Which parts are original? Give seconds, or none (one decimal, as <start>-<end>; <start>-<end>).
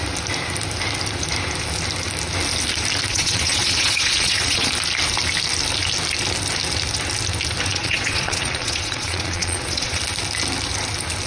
0.0-3.1; 4.7-7.7; 10.0-11.3